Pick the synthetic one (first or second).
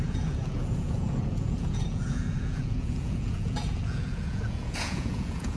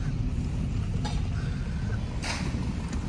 first